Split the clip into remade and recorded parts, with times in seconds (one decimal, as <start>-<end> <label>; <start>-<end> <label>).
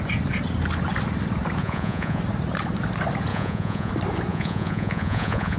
0.0-1.6 recorded; 1.6-2.2 remade; 2.2-3.3 recorded; 3.3-3.9 remade; 3.9-4.3 recorded; 4.3-5.6 remade